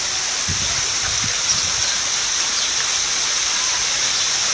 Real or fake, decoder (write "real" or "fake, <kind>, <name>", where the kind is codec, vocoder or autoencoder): real